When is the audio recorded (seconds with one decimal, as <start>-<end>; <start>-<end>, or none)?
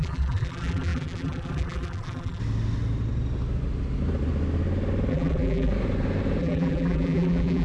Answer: 2.4-5.1; 5.7-6.4